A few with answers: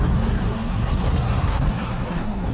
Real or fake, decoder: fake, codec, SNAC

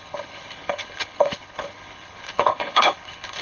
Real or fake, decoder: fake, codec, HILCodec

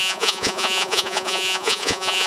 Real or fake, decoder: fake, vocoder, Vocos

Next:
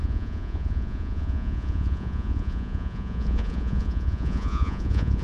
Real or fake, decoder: fake, vocoder, Vocos